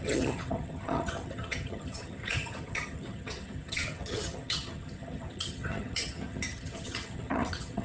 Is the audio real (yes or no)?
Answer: no